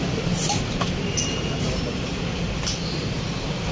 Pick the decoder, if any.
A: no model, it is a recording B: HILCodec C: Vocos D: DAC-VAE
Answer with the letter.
A